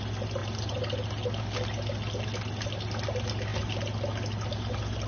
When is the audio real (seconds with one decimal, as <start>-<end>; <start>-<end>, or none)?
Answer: 0.0-5.1